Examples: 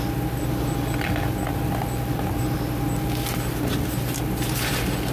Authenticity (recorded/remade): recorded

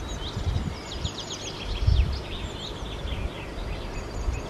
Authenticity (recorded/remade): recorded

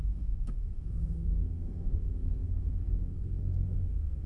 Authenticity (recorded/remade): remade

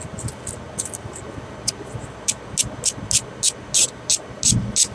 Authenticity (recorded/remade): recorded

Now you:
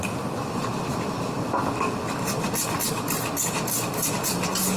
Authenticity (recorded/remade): recorded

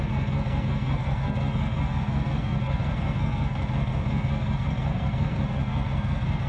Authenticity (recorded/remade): remade